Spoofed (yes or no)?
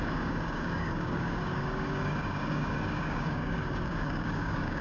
yes